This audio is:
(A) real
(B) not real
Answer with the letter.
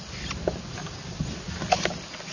A